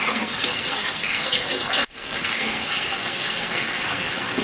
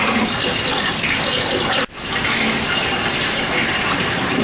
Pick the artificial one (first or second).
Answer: first